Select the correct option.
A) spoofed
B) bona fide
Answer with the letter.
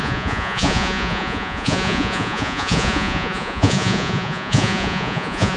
A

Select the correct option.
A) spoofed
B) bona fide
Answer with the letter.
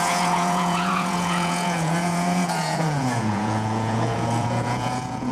A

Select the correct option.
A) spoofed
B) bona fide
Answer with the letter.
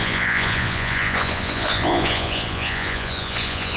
A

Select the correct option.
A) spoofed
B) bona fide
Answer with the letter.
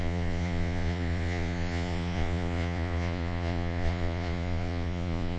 A